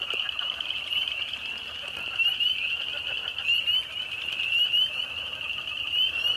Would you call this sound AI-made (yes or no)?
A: no